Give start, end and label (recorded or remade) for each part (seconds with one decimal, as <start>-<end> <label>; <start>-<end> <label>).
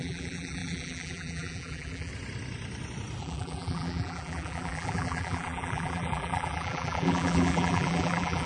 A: 0.0-2.1 remade; 2.1-3.2 recorded; 3.2-8.5 remade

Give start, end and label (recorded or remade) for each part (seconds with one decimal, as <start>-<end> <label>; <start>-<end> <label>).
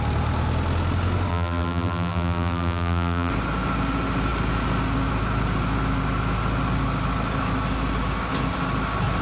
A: 0.0-1.3 recorded; 1.3-3.3 remade; 3.3-9.2 recorded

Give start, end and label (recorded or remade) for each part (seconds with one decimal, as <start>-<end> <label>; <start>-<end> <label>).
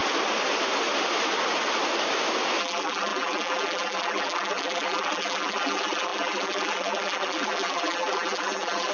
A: 0.0-2.6 recorded; 2.6-8.9 remade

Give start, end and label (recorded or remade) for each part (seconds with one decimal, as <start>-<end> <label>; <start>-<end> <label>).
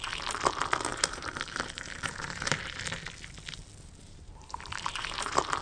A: 0.0-0.9 recorded; 0.9-2.6 remade; 2.6-4.0 recorded; 4.0-5.6 remade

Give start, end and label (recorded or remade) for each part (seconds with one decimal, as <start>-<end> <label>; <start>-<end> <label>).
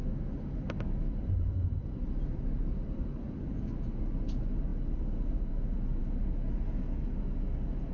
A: 0.0-1.8 recorded; 1.8-3.5 remade; 3.5-7.9 recorded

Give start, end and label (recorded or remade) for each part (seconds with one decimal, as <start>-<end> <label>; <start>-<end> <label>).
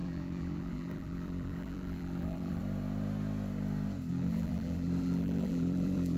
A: 0.0-2.6 remade; 2.6-4.1 recorded; 4.1-6.2 remade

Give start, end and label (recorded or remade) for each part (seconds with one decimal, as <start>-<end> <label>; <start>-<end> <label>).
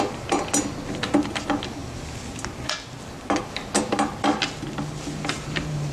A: 0.0-5.9 recorded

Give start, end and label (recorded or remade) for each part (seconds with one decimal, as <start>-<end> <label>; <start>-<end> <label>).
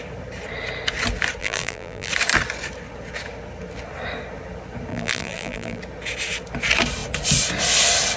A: 0.0-1.4 recorded; 1.4-2.1 remade; 2.1-4.9 recorded; 4.9-5.8 remade; 5.8-8.2 recorded